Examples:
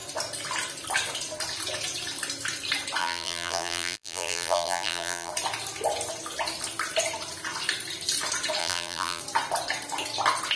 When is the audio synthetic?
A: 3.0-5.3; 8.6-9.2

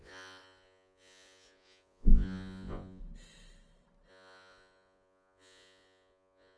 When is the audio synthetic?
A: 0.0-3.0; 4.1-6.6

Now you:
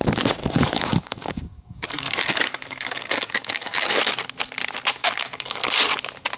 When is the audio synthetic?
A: 0.4-4.1; 5.0-5.6

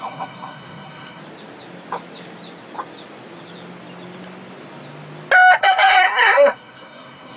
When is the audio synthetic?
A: 0.0-1.2; 5.6-7.4

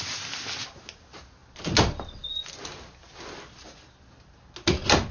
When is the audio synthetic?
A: none

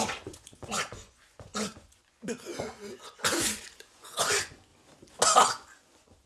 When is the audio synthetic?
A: 0.0-4.7; 5.4-6.3